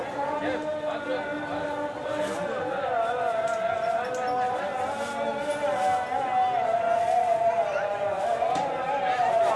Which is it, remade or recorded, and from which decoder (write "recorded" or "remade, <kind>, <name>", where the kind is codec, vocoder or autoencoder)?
recorded